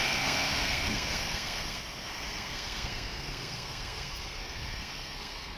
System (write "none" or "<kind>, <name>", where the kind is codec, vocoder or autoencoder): codec, SNAC